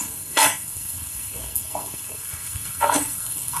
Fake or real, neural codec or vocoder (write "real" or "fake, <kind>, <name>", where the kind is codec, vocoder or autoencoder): fake, codec, SNAC